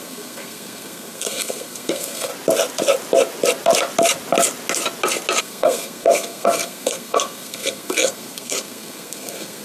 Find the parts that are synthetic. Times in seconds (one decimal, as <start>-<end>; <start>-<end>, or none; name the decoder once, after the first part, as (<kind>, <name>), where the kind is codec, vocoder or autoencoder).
0.0-2.3 (codec, SNAC); 5.4-9.6